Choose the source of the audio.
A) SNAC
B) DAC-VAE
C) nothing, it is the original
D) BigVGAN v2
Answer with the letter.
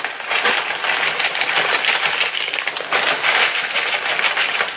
C